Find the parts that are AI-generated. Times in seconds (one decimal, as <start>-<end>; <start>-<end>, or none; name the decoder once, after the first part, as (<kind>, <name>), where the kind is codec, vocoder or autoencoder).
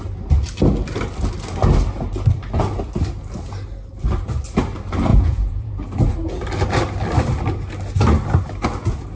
5.1-5.7 (vocoder, Vocos)